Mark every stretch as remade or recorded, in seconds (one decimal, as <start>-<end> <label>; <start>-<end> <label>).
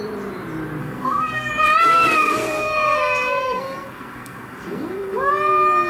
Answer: 0.0-0.8 recorded; 0.8-1.5 remade; 1.5-1.9 recorded; 1.9-5.3 remade; 5.3-5.9 recorded